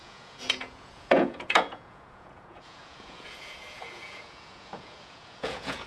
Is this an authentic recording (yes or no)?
no